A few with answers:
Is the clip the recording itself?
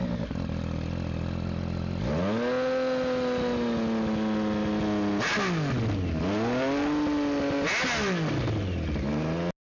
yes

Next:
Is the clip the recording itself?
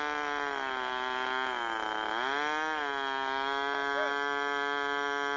yes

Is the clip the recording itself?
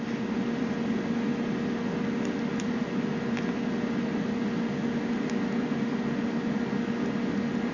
yes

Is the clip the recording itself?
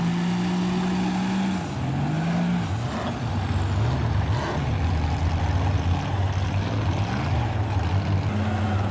yes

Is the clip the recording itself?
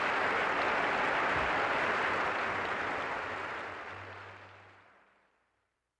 yes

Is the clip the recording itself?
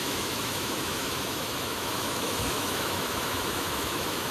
no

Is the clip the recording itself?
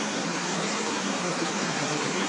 no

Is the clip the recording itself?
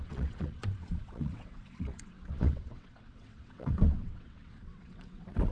no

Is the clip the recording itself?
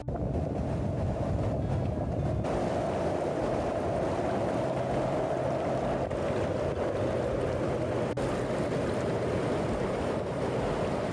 yes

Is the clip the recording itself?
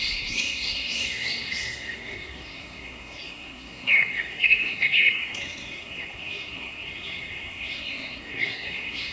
no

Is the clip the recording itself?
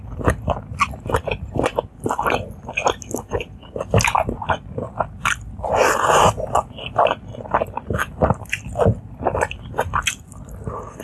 yes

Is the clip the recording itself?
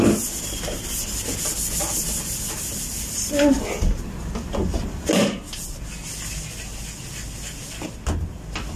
yes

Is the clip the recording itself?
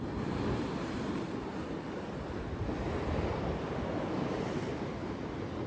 yes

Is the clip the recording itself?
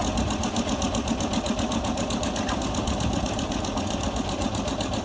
yes